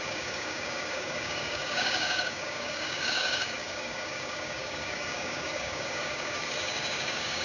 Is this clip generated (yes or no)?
yes